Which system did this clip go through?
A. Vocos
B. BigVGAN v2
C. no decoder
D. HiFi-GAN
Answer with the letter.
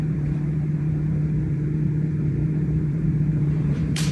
B